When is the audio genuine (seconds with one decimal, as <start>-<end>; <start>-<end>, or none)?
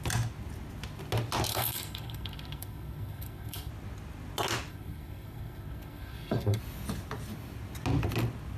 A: 0.0-1.5; 3.7-4.7; 6.6-8.6